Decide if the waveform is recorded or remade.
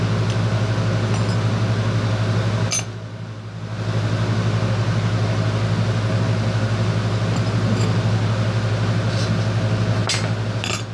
recorded